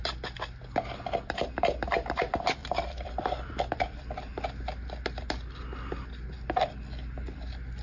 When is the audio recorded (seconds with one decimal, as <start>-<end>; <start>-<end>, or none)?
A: 0.0-2.6; 4.0-7.8